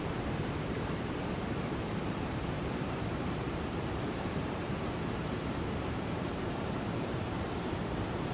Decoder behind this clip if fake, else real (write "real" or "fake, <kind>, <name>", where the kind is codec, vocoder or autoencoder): fake, vocoder, BigVGAN v2